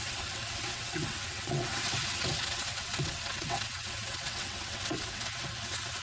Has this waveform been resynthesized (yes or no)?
yes